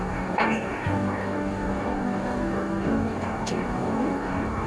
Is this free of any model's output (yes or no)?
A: no